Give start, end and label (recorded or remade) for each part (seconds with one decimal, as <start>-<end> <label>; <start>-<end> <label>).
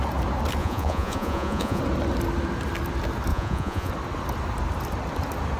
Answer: 0.0-0.6 recorded; 0.6-1.8 remade; 1.8-3.3 recorded; 3.3-3.9 remade; 3.9-5.6 recorded